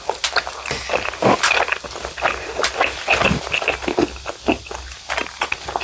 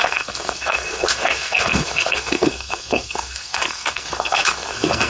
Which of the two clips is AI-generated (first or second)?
second